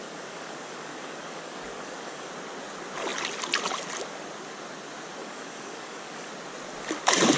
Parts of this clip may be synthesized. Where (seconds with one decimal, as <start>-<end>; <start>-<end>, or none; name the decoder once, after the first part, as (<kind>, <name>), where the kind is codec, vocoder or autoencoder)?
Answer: 0.0-2.3 (codec, DAC); 5.2-6.3